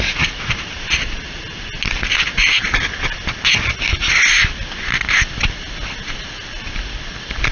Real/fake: real